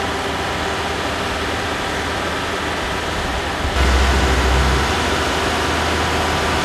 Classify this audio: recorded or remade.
recorded